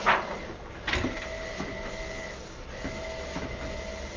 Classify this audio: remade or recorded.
recorded